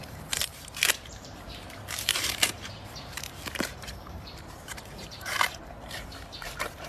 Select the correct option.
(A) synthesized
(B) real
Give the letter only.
A